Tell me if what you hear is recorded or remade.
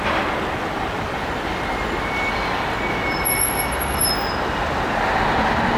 recorded